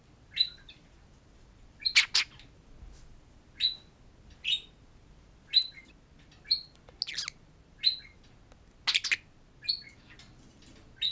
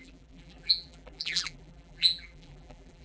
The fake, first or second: second